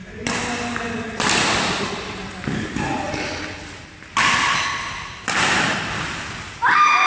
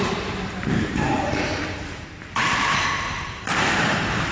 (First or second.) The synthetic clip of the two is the second